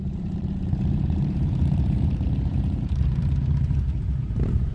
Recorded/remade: remade